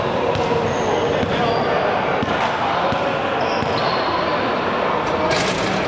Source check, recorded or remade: recorded